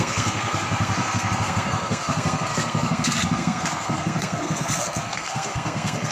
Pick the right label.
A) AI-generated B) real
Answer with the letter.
A